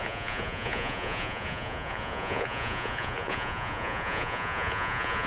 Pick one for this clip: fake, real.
fake